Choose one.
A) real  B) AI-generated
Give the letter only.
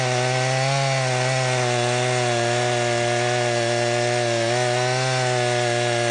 A